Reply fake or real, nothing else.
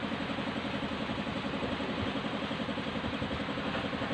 real